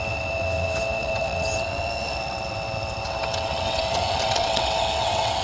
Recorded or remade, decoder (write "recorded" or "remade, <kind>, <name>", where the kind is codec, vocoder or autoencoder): remade, vocoder, WaveNeXt